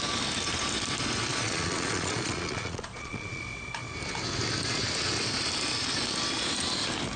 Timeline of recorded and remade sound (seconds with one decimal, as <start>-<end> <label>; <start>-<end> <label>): 0.0-1.3 recorded; 1.3-3.4 remade; 3.4-7.2 recorded